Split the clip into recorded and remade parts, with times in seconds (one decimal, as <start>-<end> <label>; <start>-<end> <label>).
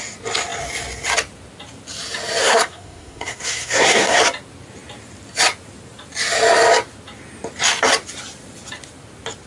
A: 0.0-2.4 recorded; 2.4-4.2 remade; 4.2-9.5 recorded